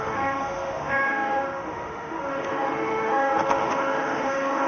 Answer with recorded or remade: remade